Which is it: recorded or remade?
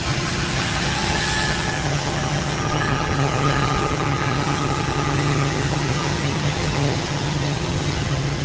remade